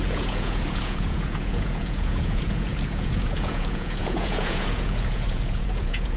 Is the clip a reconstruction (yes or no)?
yes